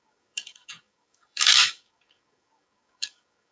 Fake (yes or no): yes